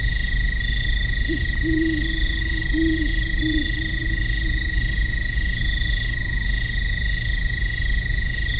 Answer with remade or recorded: remade